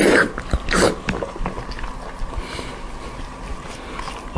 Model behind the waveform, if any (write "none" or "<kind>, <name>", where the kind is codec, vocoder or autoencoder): none